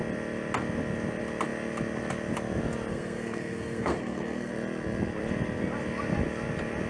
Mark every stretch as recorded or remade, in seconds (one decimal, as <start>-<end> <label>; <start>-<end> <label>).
0.0-2.9 recorded; 2.9-4.5 remade; 4.5-6.9 recorded